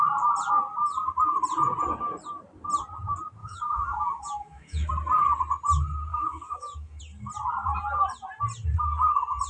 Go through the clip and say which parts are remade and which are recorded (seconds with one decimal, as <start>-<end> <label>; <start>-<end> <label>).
0.0-3.4 recorded; 3.4-4.9 remade; 4.9-6.1 recorded; 6.1-7.0 remade; 7.0-9.5 recorded